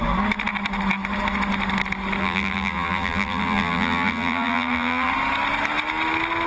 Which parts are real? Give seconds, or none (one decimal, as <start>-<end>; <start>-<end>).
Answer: 0.0-2.2; 5.1-6.5